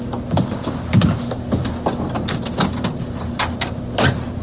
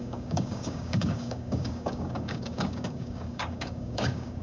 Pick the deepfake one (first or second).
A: second